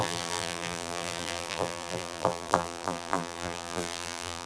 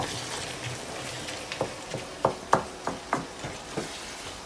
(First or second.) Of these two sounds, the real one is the second